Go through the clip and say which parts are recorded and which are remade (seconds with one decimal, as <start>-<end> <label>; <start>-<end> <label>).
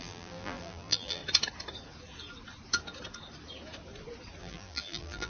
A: 0.0-1.2 remade; 1.2-4.4 recorded; 4.4-5.3 remade